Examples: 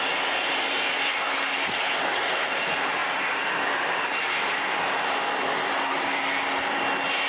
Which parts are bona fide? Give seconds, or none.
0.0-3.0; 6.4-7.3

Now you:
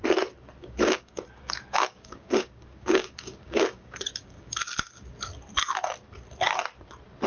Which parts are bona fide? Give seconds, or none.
0.0-0.6; 4.6-7.3

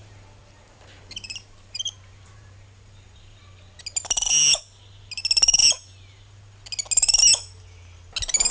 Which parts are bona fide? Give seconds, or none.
3.4-8.5

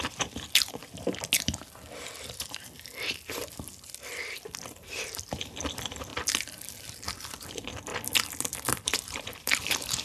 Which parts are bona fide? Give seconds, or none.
0.8-4.1; 6.1-7.5

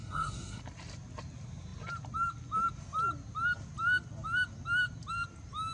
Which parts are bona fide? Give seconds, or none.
0.6-5.7

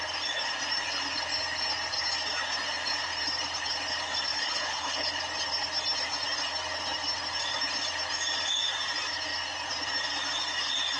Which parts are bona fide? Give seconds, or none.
0.0-4.3; 5.2-11.0

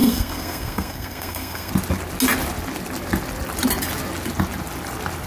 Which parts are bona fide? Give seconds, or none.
1.7-5.3